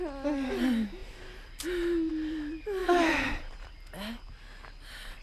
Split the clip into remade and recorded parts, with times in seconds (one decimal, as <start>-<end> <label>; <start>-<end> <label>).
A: 0.0-1.0 recorded; 1.0-2.1 remade; 2.1-2.8 recorded; 2.8-3.7 remade; 3.7-5.2 recorded